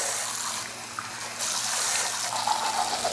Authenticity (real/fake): real